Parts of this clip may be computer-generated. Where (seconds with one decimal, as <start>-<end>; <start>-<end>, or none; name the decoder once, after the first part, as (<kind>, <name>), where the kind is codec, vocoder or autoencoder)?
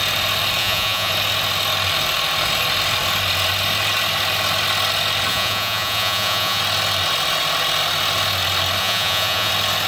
0.6-1.1 (vocoder, Vocos); 5.3-6.6; 8.8-9.5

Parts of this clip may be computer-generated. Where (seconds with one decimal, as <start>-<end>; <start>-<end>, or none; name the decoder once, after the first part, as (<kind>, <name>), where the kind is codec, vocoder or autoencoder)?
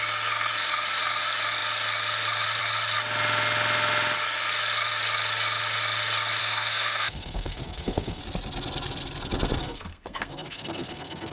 6.4-8.2 (codec, SNAC); 9.6-11.3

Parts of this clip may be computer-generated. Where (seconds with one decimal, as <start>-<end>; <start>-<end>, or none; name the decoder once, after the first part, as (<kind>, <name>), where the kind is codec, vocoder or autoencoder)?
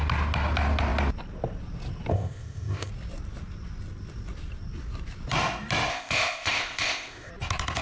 2.1-2.9 (codec, ZipCodec); 5.9-7.3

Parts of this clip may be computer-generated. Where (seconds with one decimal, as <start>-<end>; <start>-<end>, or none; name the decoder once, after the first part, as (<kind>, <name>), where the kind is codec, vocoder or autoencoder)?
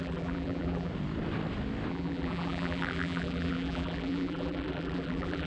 0.0-0.9 (vocoder, BigVGAN v2); 1.9-5.5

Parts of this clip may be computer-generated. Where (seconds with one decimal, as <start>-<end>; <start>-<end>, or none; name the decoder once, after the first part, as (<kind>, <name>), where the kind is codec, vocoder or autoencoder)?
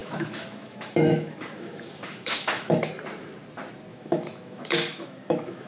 0.0-2.9 (autoencoder, DAC-VAE); 3.9-5.7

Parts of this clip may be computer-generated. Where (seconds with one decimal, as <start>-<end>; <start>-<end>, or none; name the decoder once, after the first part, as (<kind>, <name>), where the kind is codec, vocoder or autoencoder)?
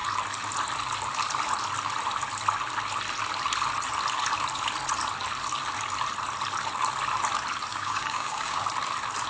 7.7-8.6 (codec, DAC)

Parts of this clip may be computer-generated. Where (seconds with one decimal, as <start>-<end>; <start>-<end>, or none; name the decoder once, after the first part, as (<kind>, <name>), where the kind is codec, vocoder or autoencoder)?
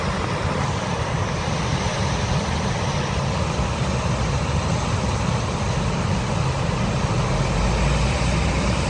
none